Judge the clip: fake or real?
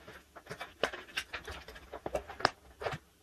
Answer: real